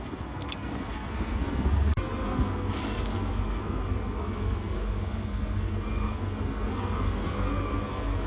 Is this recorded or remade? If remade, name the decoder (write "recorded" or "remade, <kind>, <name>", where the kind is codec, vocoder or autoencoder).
remade, codec, SNAC